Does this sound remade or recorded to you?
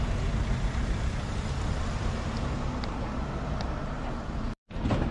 remade